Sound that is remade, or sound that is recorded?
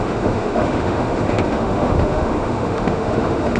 remade